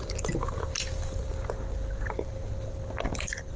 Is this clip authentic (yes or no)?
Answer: yes